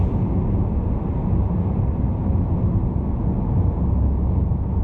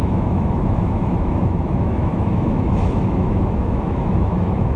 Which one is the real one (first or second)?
first